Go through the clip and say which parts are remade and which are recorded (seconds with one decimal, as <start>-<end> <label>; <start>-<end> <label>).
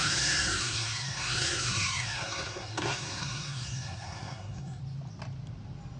0.0-4.8 remade; 4.8-6.0 recorded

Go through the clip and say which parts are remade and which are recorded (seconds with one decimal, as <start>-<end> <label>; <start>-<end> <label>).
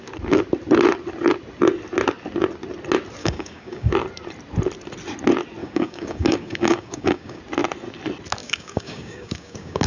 0.0-3.2 recorded; 3.2-3.9 remade; 3.9-5.6 recorded; 5.6-7.4 remade; 7.4-8.4 recorded; 8.4-9.9 remade